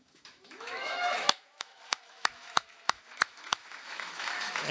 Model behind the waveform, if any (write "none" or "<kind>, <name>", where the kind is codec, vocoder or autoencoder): autoencoder, DAC-VAE